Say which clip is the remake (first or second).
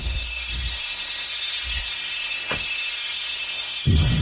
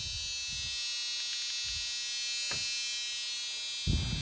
first